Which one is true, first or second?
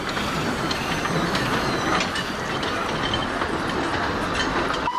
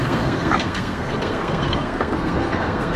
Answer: first